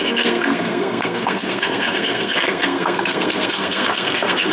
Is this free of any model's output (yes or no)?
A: no